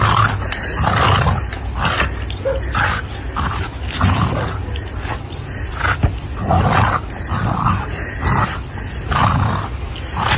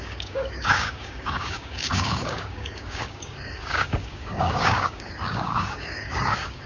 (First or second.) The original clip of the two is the first